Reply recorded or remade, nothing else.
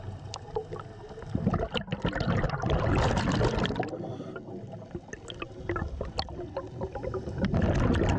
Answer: recorded